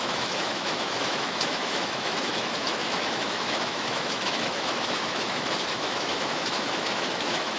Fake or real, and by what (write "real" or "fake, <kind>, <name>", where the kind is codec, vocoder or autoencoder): fake, autoencoder, DAC-VAE